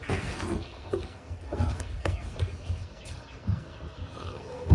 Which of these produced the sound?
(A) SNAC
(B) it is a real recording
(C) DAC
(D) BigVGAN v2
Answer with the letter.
A